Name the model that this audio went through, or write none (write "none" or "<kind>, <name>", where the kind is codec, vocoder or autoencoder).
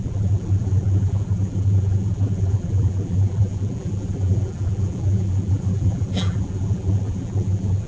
vocoder, BigVGAN v2